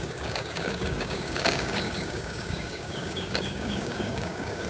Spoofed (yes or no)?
yes